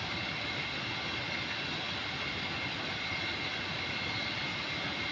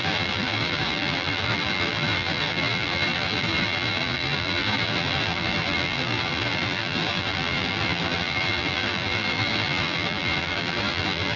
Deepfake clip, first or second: second